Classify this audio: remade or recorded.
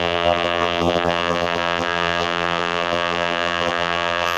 remade